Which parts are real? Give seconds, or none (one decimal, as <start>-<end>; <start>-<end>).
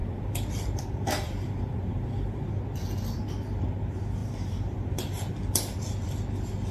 2.5-4.2; 5.2-6.7